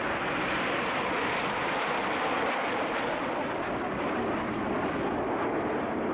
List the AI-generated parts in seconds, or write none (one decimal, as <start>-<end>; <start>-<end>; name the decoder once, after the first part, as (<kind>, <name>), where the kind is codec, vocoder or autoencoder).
none